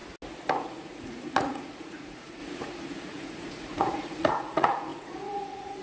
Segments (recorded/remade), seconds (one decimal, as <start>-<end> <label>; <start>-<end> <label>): 0.0-0.5 recorded; 0.5-5.8 remade